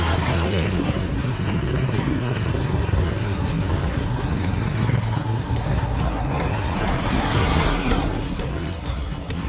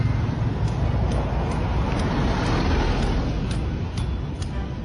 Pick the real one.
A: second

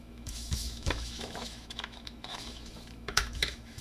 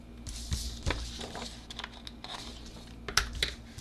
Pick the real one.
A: second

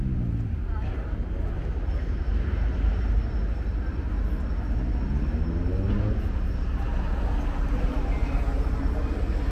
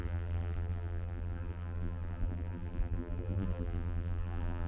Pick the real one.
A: first